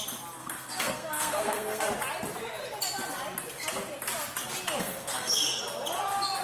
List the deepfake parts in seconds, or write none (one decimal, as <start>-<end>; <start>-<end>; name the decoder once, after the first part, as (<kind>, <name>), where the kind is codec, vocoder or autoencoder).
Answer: 0.4-1.9 (codec, SNAC); 4.8-5.6

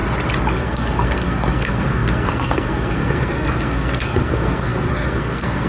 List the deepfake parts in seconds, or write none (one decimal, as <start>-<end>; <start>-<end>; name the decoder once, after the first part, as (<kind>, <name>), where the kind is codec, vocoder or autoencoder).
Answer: 0.5-5.7 (codec, SNAC)

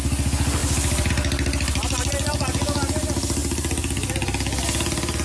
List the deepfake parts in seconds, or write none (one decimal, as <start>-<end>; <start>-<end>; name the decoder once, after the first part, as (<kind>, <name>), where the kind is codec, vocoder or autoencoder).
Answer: none

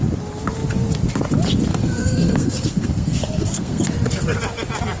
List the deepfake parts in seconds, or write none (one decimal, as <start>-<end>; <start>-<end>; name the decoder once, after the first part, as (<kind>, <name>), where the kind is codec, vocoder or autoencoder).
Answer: 1.7-3.9 (codec, SNAC)

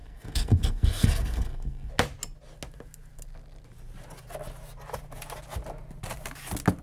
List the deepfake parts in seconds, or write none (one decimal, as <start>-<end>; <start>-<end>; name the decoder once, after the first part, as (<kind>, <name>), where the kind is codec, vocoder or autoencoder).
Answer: 0.0-1.9 (codec, SNAC)

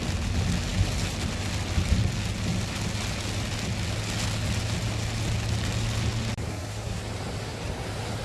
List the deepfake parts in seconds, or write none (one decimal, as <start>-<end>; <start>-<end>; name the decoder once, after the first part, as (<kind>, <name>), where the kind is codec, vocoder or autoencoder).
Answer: 6.5-7.0 (codec, SNAC)